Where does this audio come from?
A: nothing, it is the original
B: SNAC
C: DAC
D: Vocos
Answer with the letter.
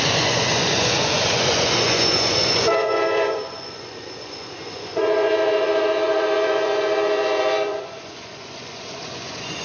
D